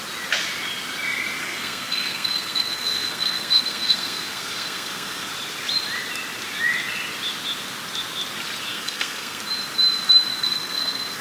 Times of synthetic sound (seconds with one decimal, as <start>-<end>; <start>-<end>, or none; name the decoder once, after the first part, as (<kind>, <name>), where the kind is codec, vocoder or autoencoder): 1.4-5.3 (codec, SNAC); 8.7-9.4; 10.3-11.2

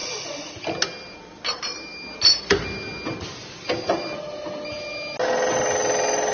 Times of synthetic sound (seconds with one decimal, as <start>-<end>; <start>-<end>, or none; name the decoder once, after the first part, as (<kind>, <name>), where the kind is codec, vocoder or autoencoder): 0.0-0.5 (vocoder, Vocos)

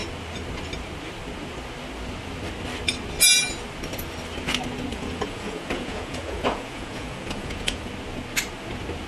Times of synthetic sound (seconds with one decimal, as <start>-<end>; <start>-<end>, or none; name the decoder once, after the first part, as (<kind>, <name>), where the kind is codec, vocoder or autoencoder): 4.9-7.9 (vocoder, Vocos)

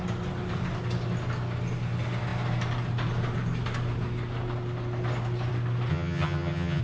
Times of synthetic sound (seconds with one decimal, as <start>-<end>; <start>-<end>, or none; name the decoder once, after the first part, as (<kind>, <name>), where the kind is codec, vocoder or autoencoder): 5.9-6.8 (vocoder, HiFi-GAN)

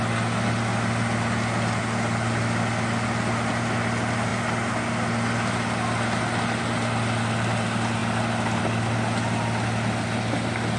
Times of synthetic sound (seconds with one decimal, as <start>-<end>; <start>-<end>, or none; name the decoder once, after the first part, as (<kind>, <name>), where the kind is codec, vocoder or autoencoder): none

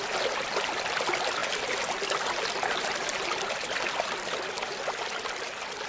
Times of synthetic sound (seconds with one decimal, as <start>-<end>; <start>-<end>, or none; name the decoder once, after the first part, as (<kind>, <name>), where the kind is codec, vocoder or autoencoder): none

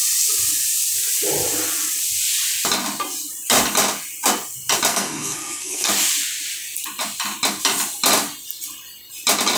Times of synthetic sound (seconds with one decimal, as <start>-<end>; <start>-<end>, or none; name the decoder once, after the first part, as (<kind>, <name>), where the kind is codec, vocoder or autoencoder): 4.9-5.9 (codec, SNAC)